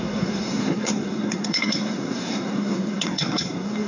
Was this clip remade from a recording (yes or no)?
yes